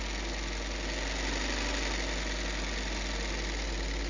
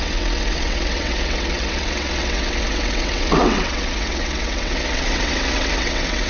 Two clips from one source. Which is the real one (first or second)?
first